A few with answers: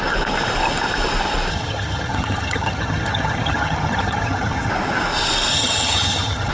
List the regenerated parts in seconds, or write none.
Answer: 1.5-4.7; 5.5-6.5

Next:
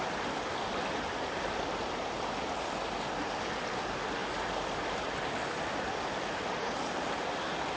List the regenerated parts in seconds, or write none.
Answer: none